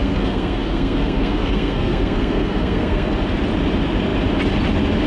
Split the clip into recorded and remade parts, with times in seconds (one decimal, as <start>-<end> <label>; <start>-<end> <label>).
0.0-3.1 remade; 3.1-5.1 recorded